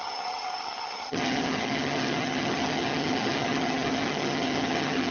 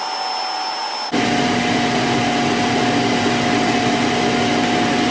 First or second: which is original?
second